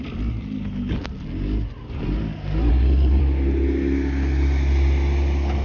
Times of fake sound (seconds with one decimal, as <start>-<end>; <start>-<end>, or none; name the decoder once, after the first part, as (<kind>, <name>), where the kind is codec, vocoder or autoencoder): 2.7-3.2 (codec, SNAC)